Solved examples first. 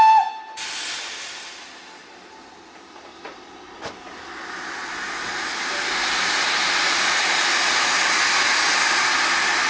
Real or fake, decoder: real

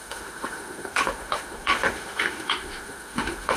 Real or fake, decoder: fake, autoencoder, DAC-VAE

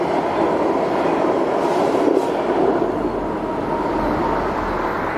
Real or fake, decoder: real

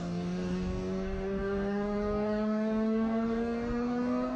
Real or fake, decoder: fake, codec, DAC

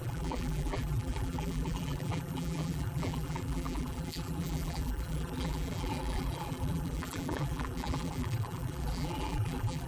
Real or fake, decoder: fake, vocoder, BigVGAN v2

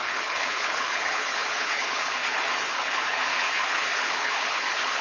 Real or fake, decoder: fake, codec, HILCodec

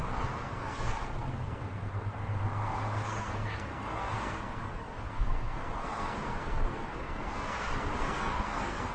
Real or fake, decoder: fake, codec, SNAC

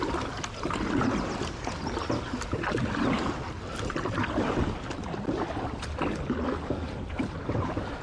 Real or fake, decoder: real